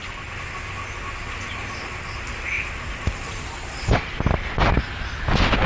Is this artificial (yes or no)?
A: no